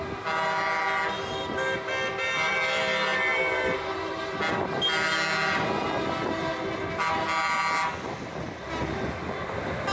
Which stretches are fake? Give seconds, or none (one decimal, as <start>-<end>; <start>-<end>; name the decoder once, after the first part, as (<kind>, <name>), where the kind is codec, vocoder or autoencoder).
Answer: none